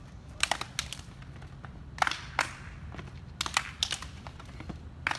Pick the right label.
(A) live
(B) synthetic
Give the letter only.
A